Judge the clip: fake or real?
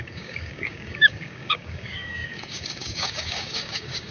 fake